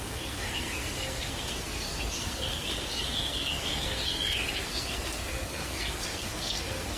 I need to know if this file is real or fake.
fake